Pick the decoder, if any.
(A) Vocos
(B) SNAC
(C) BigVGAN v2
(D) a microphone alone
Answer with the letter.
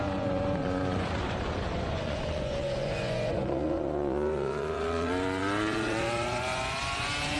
A